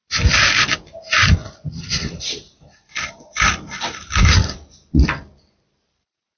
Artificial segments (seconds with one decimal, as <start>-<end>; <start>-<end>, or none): 0.0-6.4